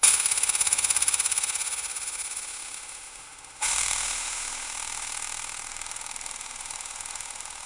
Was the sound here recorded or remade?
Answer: remade